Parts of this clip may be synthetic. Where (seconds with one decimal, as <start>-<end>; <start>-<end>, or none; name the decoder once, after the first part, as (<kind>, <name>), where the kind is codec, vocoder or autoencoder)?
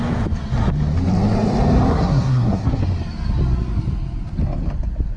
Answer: 1.9-2.8 (codec, SNAC)